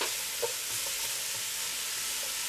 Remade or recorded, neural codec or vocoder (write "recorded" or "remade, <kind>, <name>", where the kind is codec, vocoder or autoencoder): recorded